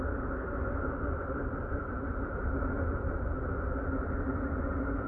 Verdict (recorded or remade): recorded